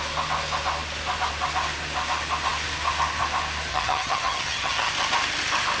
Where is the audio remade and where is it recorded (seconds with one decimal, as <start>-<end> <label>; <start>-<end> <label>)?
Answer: 0.0-3.7 recorded; 3.7-4.9 remade; 4.9-5.8 recorded